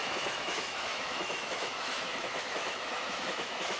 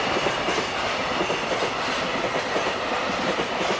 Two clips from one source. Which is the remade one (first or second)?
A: first